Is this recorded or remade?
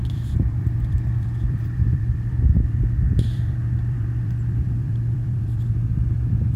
remade